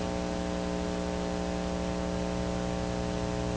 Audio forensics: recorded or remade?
recorded